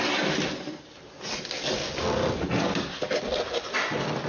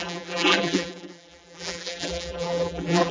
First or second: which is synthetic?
second